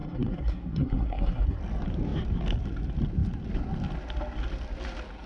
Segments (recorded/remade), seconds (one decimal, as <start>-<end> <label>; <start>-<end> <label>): 0.0-1.6 remade; 1.6-5.3 recorded